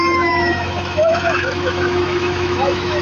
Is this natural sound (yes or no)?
no